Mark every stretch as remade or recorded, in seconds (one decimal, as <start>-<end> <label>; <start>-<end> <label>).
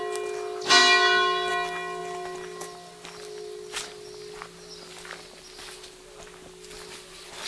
0.0-7.5 recorded